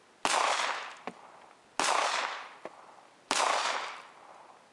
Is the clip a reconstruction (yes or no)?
no